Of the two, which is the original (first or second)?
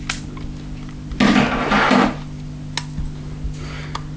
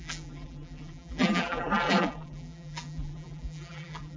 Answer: first